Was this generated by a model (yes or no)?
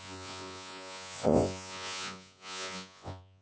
yes